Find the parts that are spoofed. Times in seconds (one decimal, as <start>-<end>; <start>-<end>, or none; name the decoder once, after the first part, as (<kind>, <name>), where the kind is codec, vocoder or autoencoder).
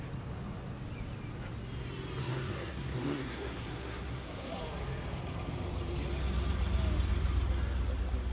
2.2-4.6 (codec, SNAC)